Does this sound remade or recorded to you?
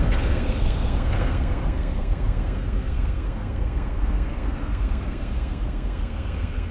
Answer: remade